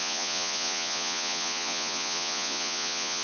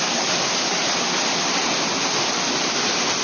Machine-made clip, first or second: first